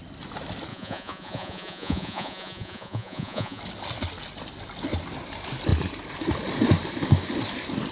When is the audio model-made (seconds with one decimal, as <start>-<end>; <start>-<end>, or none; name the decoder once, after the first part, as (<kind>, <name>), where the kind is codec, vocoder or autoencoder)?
0.7-3.6 (vocoder, Vocos)